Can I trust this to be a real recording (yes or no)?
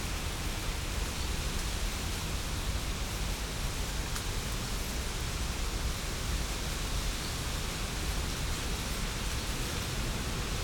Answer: yes